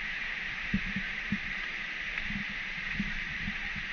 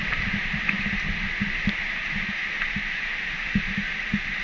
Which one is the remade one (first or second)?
first